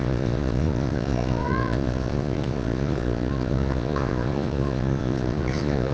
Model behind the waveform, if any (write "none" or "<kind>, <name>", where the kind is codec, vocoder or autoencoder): vocoder, Vocos